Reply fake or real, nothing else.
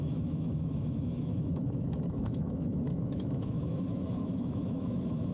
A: fake